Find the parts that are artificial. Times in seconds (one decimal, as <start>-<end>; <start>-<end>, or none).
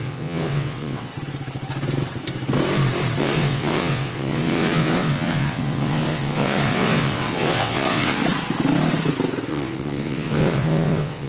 0.0-1.1; 3.2-8.2; 9.5-11.3